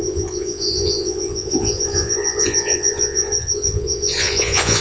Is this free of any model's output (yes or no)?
no